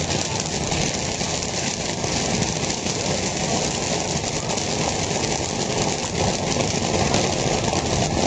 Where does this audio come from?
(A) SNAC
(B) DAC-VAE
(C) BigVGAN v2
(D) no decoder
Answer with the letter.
D